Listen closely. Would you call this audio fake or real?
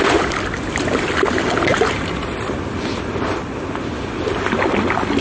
real